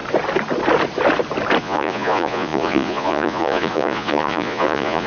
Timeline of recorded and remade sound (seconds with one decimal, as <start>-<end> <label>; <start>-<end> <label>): 0.0-1.6 recorded; 1.6-5.1 remade